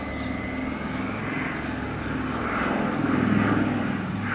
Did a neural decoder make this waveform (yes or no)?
no